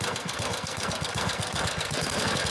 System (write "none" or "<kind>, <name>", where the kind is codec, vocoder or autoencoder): codec, SNAC